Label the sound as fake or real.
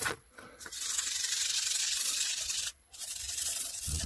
fake